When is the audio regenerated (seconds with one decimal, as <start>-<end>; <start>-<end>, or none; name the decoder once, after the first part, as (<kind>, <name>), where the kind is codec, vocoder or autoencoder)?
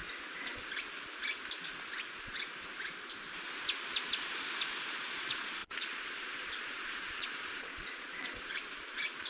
4.8-9.3 (vocoder, Vocos)